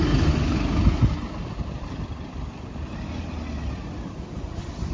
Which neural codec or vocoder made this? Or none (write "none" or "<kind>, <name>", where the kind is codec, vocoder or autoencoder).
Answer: none